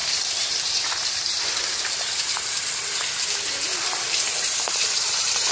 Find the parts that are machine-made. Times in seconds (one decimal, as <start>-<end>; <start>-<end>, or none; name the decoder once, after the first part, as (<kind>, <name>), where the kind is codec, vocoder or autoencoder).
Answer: 0.0-1.4 (vocoder, BigVGAN v2); 4.5-5.5